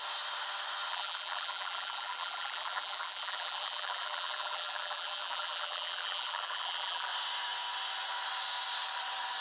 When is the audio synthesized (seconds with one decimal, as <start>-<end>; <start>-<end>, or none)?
0.9-7.1